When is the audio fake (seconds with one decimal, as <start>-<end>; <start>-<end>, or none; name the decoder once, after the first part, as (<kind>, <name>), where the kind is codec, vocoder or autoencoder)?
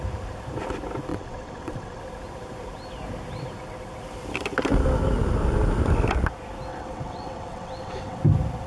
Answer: 1.1-2.0 (vocoder, WaveNeXt); 6.7-8.2